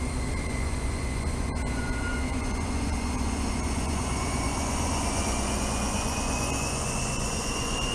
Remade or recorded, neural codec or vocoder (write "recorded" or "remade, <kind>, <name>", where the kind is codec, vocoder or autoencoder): remade, vocoder, Vocos